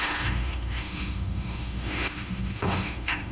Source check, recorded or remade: remade